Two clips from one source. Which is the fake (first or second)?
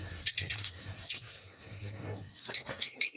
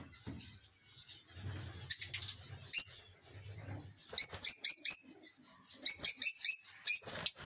first